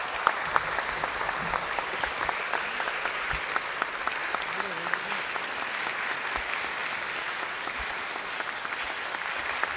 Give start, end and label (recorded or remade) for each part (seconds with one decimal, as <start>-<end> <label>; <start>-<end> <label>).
0.0-9.8 recorded